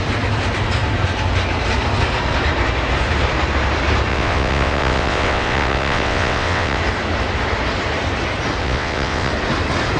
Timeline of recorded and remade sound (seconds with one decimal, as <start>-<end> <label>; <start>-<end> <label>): 0.0-4.1 recorded; 4.1-6.8 remade; 6.8-8.6 recorded; 8.6-9.3 remade; 9.3-10.0 recorded